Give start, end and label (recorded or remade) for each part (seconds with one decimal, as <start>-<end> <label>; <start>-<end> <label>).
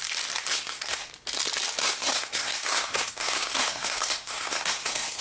0.0-0.5 recorded; 0.5-1.1 remade; 1.1-1.8 recorded; 1.8-5.2 remade